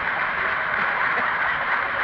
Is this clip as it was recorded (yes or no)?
yes